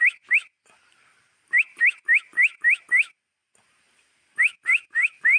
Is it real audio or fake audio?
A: real